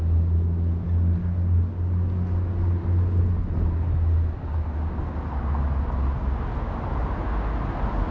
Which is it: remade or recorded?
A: recorded